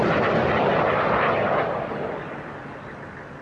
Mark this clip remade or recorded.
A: recorded